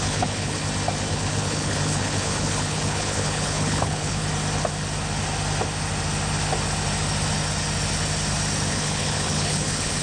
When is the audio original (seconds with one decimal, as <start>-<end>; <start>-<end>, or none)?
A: 0.6-1.1; 4.2-8.7